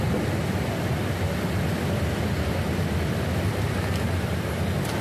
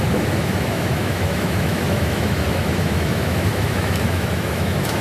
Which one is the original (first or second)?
first